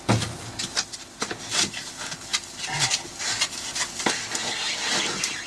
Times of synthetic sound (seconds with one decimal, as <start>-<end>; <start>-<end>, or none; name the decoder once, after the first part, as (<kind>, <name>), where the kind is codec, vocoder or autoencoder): none